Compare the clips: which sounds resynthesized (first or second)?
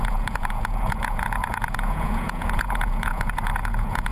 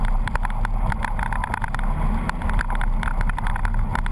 first